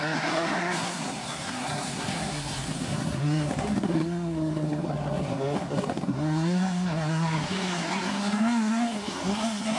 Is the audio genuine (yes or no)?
no